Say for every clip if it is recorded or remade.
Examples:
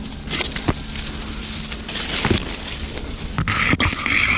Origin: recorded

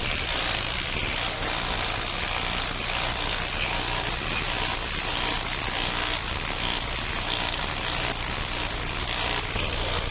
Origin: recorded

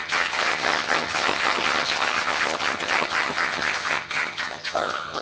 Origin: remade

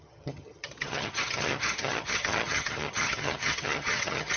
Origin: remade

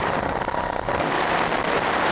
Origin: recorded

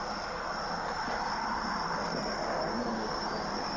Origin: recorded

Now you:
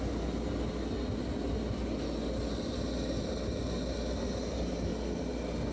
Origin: recorded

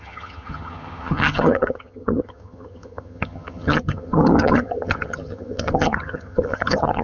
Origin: remade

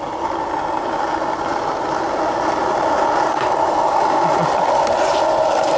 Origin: recorded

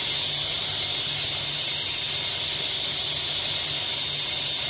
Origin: recorded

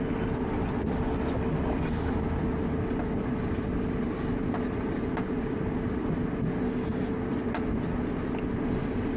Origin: recorded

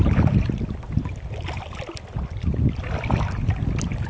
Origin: recorded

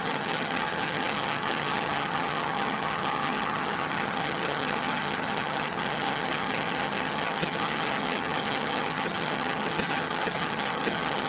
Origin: remade